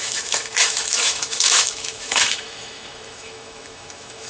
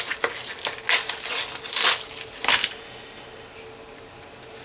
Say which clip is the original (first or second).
second